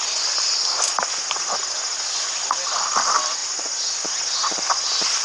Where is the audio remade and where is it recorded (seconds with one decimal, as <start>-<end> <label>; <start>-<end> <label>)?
0.0-5.2 recorded